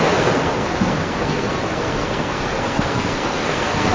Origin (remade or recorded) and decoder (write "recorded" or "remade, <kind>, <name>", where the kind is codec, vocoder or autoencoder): remade, codec, SNAC